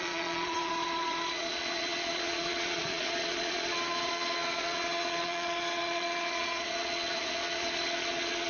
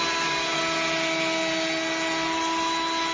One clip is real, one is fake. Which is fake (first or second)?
first